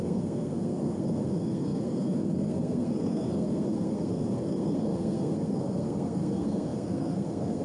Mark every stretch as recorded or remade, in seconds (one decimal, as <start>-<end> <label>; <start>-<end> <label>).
0.0-7.6 remade